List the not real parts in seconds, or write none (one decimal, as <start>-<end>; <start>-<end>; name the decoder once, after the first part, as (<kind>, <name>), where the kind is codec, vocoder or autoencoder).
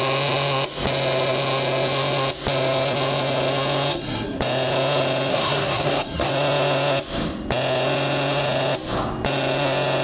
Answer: 3.9-4.4 (codec, SNAC); 5.3-6.3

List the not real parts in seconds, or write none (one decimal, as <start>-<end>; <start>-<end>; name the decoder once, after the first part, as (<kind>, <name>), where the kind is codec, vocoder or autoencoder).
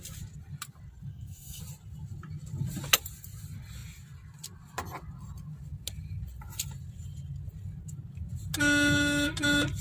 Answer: 1.1-1.6 (codec, SNAC)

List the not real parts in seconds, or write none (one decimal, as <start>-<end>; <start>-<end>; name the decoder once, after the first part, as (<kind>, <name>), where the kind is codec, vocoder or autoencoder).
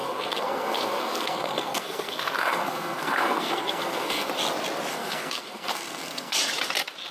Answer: 0.0-4.3 (codec, SNAC); 4.9-6.4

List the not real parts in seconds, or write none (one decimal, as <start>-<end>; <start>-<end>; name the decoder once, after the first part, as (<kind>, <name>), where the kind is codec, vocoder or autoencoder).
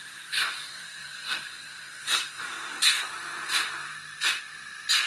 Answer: 0.0-3.1 (codec, SNAC)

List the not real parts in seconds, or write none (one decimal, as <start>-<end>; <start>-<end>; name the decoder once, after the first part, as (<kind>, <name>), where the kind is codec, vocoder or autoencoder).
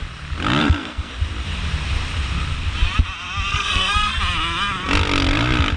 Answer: 0.6-1.1 (codec, SNAC); 3.5-4.2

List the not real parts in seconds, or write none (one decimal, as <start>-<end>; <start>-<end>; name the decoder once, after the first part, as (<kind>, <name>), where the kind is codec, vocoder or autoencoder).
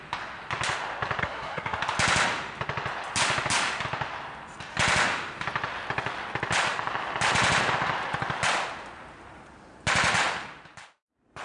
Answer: 1.2-1.8 (codec, SNAC)